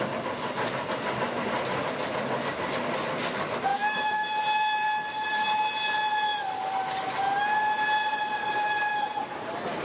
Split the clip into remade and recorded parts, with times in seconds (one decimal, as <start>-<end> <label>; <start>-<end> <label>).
0.0-3.7 recorded; 3.7-4.4 remade; 4.4-9.8 recorded

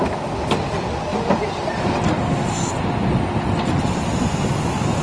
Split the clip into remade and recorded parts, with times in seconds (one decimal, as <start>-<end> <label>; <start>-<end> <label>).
0.0-5.0 recorded